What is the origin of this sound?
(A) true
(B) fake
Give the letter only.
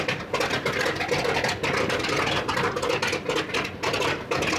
A